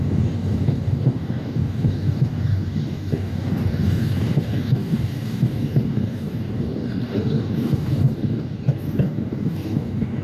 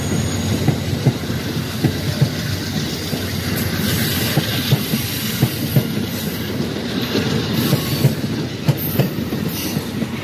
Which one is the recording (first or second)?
second